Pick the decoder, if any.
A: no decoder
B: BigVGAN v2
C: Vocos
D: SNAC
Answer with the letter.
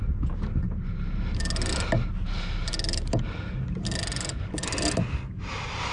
A